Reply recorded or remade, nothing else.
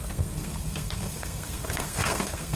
remade